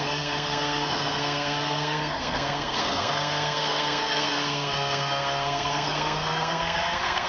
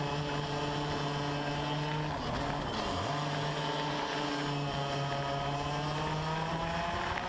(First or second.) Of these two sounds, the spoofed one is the first